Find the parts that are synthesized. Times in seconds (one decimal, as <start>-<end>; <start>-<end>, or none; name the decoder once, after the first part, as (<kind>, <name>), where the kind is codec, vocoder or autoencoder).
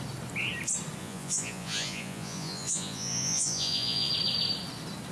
1.0-4.1 (vocoder, Vocos)